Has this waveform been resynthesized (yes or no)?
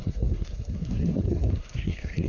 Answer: yes